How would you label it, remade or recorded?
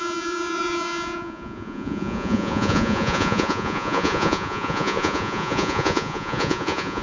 remade